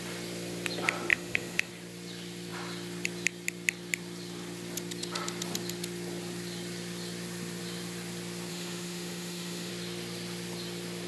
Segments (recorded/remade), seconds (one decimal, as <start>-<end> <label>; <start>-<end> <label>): 0.0-1.1 recorded; 1.1-1.7 remade; 1.7-8.5 recorded; 8.5-9.7 remade; 9.7-11.1 recorded